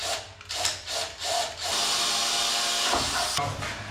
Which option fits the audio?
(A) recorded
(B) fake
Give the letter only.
A